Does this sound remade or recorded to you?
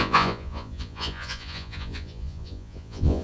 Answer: remade